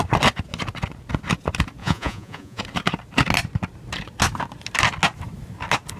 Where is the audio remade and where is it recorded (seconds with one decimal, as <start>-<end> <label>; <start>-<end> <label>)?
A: 0.0-1.8 recorded; 1.8-2.6 remade; 2.6-6.0 recorded